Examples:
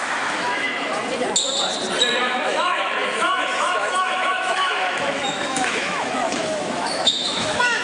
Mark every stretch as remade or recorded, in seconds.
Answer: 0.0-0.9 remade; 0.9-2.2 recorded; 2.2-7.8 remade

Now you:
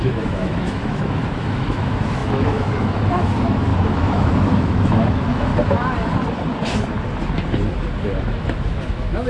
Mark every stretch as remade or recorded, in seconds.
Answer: 0.0-5.5 remade; 5.5-8.2 recorded; 8.2-9.3 remade

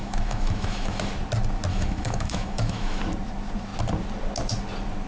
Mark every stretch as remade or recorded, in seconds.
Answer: 0.0-1.1 remade; 1.1-1.7 recorded; 1.7-3.0 remade; 3.0-5.1 recorded

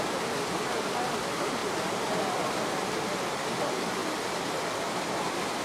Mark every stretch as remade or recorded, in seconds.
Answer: 0.0-5.6 recorded

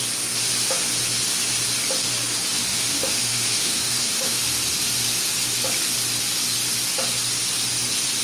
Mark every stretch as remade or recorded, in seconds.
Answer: 0.0-2.7 recorded; 2.7-4.4 remade; 4.4-8.2 recorded

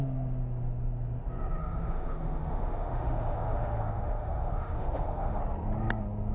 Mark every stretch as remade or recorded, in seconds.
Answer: 0.0-1.6 recorded; 1.6-5.4 remade; 5.4-6.3 recorded

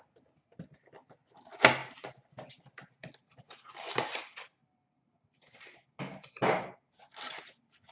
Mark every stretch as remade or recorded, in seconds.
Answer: 0.0-7.9 recorded